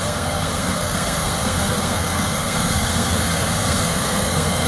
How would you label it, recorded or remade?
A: remade